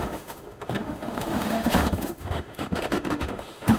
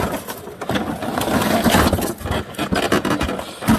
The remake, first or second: first